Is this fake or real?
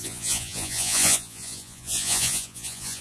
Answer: fake